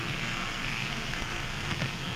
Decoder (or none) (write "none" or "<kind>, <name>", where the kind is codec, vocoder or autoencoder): codec, SNAC